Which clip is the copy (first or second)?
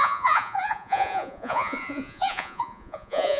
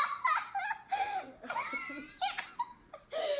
first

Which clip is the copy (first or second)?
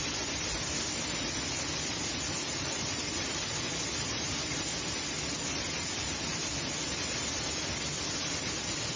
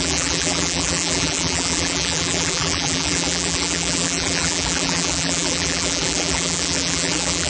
second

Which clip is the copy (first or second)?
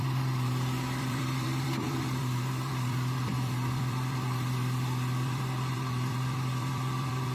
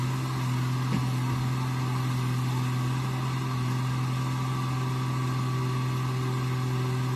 first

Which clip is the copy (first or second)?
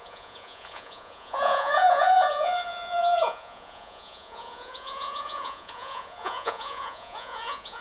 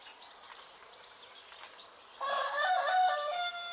first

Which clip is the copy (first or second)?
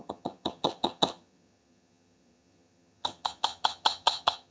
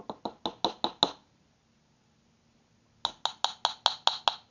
first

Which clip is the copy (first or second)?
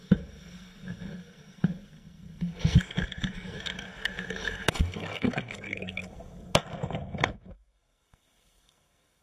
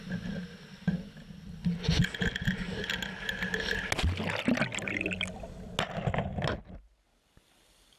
first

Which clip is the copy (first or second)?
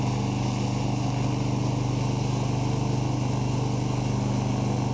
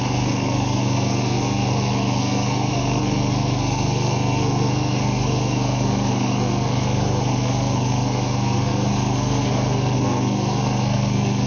second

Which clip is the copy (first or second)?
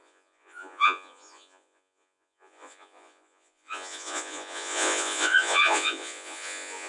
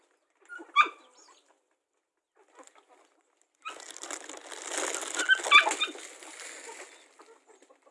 first